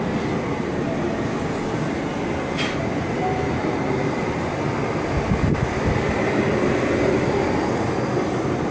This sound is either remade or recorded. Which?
recorded